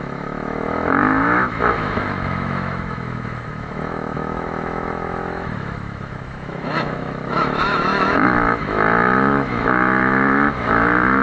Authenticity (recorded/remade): remade